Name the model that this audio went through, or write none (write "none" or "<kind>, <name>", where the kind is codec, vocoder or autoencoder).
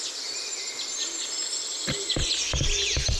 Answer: none